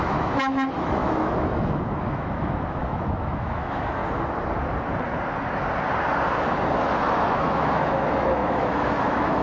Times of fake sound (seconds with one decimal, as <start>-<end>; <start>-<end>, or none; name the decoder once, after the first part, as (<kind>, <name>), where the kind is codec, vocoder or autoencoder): 0.0-4.0 (autoencoder, DAC-VAE); 6.8-9.4